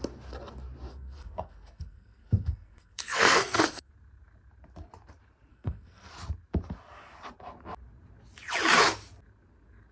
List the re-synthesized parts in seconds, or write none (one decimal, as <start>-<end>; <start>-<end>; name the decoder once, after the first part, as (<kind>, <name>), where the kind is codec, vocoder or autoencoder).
0.9-3.9 (codec, SNAC); 5.5-6.1